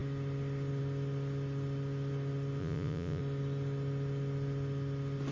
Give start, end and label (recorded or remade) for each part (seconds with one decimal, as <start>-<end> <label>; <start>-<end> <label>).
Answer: 0.0-2.6 recorded; 2.6-3.2 remade; 3.2-5.3 recorded